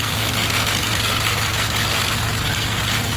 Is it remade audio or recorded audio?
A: remade